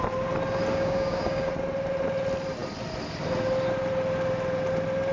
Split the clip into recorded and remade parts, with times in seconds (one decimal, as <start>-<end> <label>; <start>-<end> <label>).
0.0-0.7 recorded; 0.7-1.5 remade; 1.5-5.1 recorded